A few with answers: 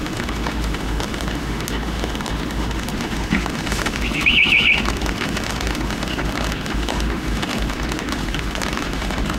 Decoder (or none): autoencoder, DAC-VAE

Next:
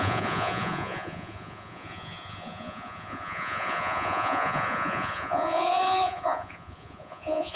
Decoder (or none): vocoder, Vocos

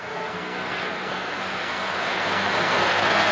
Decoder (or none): codec, SNAC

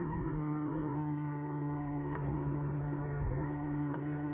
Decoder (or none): codec, SNAC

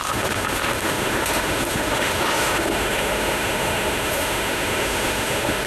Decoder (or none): autoencoder, DAC-VAE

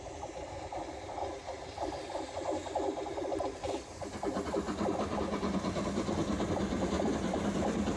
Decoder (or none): none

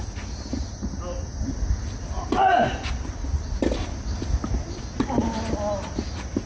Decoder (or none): none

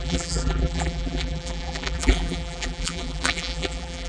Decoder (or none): vocoder, BigVGAN v2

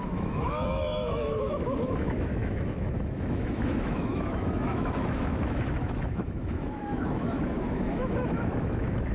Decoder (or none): autoencoder, DAC-VAE